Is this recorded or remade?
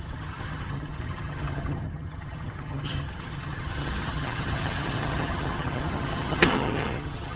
remade